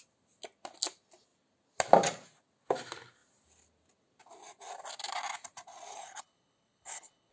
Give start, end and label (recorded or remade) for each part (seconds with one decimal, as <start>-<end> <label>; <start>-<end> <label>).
0.0-5.9 recorded; 5.9-7.3 remade